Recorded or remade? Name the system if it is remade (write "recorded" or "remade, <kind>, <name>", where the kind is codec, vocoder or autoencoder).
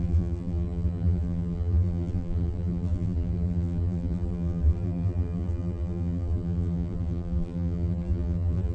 remade, vocoder, BigVGAN v2